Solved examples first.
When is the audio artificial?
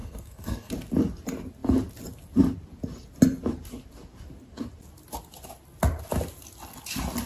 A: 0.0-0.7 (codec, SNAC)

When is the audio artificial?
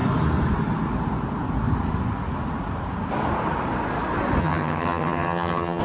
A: 4.4-5.8 (vocoder, HiFi-GAN)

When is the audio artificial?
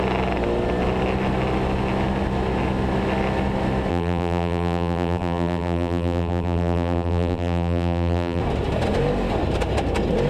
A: 3.9-8.4 (vocoder, BigVGAN v2)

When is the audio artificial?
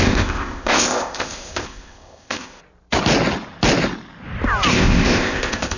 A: 0.0-2.6 (codec, ZipCodec); 4.7-5.8